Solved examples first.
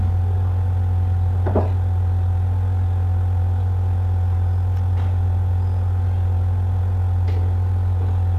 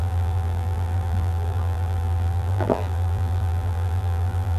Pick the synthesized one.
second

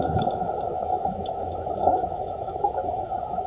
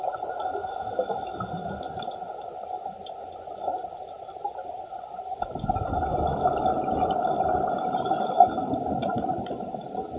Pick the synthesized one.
first